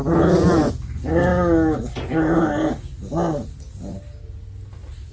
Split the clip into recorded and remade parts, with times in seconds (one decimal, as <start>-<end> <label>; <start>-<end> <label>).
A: 0.0-5.1 recorded